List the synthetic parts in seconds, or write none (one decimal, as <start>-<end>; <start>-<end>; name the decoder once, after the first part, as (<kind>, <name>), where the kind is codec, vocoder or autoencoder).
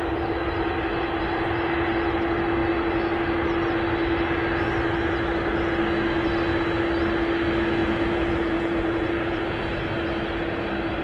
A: 7.8-9.6 (vocoder, Vocos)